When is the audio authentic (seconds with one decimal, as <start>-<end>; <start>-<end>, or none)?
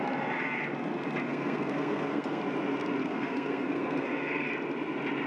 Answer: 0.0-1.3; 2.4-3.0; 4.5-5.3